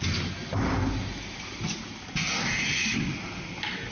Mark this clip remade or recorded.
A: recorded